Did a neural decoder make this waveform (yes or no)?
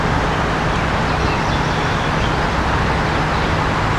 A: no